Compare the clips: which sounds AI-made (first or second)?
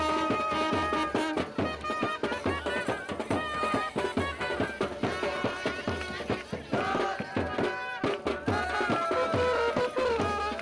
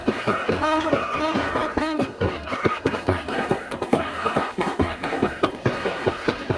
second